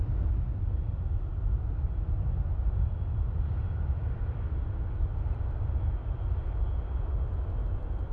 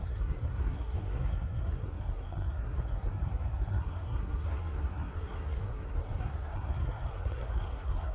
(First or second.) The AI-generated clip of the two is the second